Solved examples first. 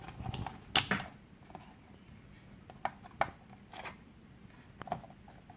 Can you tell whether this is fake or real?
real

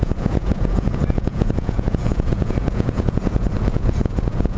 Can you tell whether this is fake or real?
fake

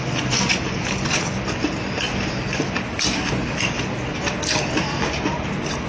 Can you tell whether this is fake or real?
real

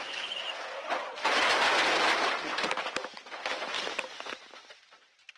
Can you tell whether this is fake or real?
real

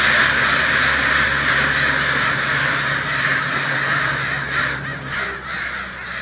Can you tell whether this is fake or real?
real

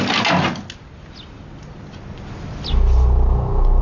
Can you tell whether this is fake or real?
real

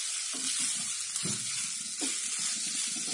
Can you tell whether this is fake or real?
real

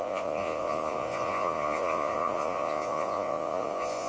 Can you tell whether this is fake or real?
fake